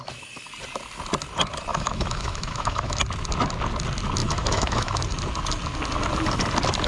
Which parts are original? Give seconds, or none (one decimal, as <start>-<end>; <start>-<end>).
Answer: 0.0-1.7; 3.0-4.2; 5.0-6.9